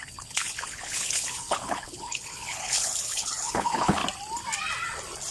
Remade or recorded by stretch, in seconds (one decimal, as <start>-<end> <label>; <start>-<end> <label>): 0.0-4.0 remade; 4.0-5.3 recorded